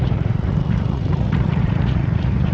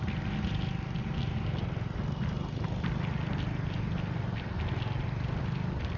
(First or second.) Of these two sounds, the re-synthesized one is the first